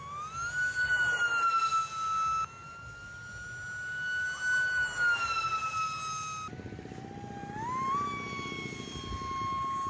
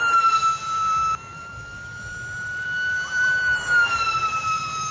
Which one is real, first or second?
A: first